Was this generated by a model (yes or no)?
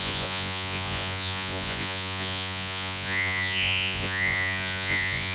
yes